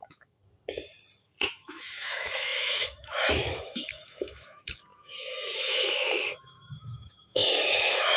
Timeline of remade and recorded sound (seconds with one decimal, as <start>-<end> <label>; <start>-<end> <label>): 0.0-0.4 remade; 0.4-1.2 recorded; 1.2-8.2 remade